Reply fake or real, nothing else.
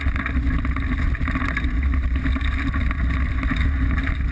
real